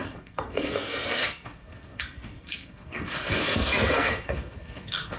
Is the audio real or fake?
fake